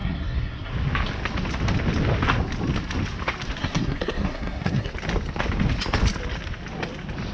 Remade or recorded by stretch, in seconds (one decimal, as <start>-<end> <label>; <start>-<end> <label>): 0.0-0.7 remade; 0.7-3.6 recorded; 3.6-4.9 remade; 4.9-7.3 recorded